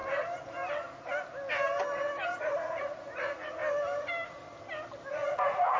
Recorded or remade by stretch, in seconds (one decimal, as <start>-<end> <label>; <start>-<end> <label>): 0.0-2.4 recorded; 2.4-3.6 remade; 3.6-5.1 recorded; 5.1-5.8 remade